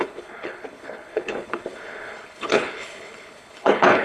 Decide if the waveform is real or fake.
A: fake